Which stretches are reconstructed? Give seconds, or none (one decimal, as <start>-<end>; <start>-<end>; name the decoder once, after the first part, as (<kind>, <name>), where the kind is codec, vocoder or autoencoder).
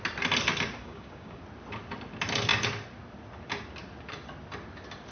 0.8-1.4 (codec, DAC)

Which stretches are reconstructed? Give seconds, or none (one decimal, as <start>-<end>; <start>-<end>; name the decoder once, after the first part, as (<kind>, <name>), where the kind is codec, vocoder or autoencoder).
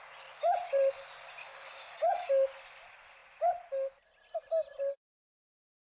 1.4-2.3 (codec, DAC)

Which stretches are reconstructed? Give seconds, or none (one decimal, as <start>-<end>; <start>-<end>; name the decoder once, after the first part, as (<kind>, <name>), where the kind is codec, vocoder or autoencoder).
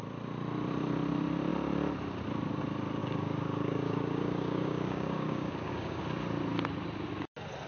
3.0-6.0 (codec, DAC)